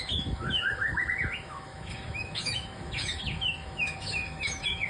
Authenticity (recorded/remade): remade